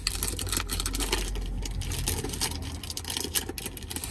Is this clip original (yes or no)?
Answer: yes